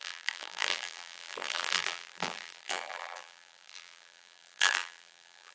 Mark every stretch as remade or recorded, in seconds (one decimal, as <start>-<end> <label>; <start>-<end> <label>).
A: 0.0-5.5 remade